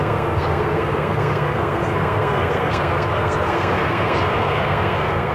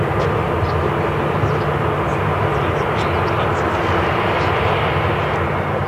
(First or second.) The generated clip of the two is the first